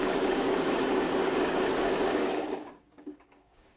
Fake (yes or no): yes